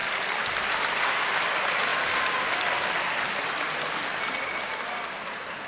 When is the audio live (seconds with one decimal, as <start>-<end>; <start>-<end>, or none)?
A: 0.0-5.7